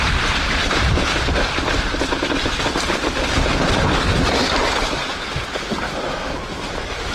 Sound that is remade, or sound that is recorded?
remade